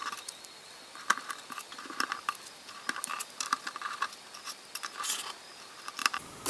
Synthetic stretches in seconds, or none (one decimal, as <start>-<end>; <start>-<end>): none